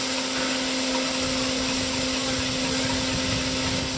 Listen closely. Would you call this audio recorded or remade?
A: recorded